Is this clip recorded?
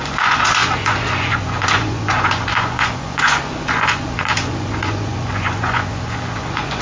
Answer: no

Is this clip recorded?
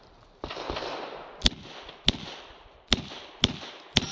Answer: yes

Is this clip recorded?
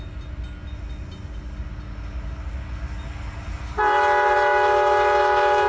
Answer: yes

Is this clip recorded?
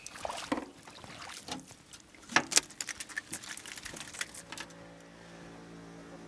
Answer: yes